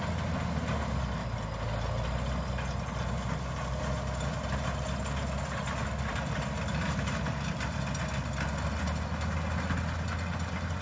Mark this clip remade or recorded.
recorded